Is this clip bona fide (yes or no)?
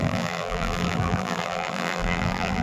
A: no